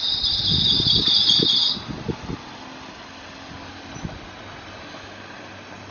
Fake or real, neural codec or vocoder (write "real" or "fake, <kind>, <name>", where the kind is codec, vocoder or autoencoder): real